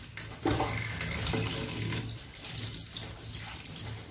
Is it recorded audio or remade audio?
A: recorded